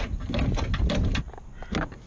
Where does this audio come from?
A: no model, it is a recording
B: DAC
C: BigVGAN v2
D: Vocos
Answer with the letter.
A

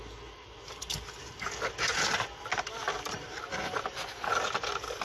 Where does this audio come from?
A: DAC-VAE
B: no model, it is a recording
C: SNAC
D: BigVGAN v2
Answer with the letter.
B